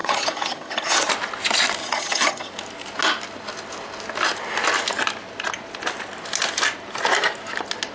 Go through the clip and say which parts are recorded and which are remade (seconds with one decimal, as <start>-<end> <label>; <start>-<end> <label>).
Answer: 0.0-1.1 remade; 1.1-1.8 recorded; 1.8-2.5 remade; 2.5-7.9 recorded